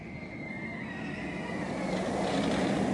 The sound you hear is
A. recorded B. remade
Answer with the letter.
A